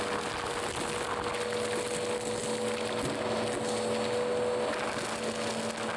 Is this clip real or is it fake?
real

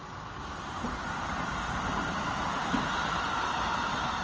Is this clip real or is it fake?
real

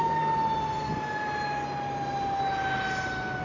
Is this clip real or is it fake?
real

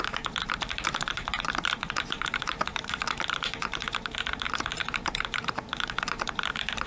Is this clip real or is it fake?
fake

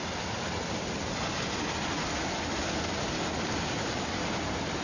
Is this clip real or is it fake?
real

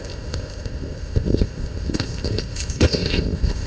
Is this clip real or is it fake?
fake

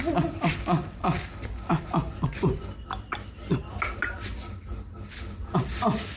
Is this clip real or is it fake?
real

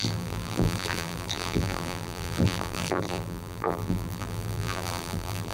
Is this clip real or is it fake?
fake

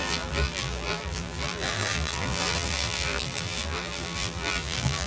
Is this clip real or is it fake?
fake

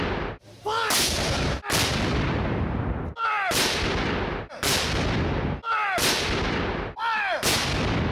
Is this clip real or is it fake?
real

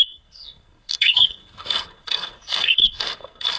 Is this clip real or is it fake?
fake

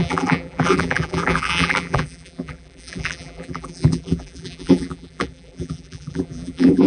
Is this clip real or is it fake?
fake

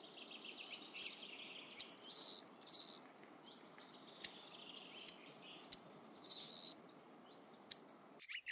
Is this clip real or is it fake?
real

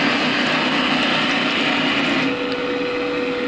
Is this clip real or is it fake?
real